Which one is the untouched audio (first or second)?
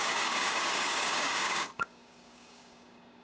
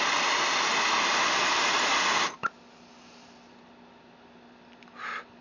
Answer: second